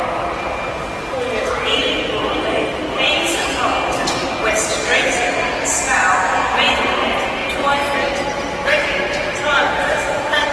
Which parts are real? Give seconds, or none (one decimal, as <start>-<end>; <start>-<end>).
0.0-10.5